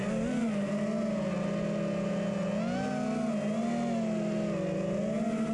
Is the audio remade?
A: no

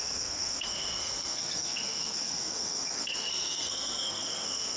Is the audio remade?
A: yes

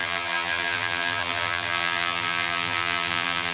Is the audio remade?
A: yes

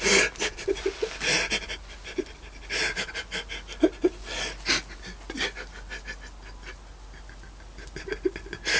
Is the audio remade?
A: no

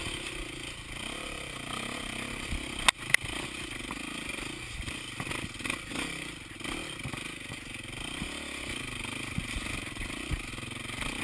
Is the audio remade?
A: no